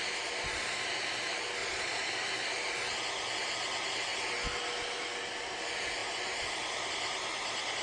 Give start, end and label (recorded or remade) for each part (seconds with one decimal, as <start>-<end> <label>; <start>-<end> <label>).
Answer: 0.0-1.6 recorded; 1.6-2.1 remade; 2.1-7.8 recorded